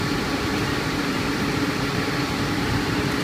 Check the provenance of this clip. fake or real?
fake